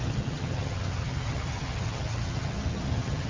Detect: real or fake fake